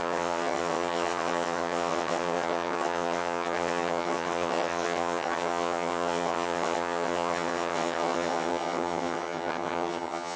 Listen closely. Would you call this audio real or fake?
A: fake